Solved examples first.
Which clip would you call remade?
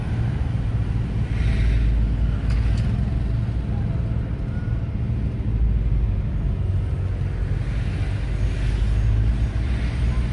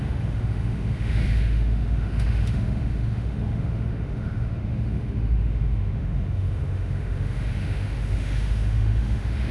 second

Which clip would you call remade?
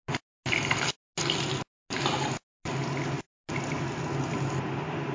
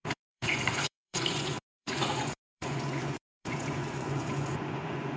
second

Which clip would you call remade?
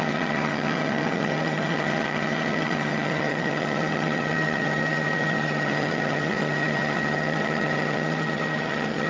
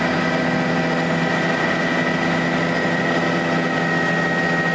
first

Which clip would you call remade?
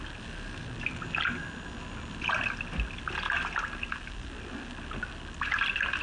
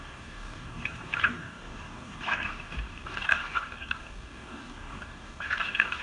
second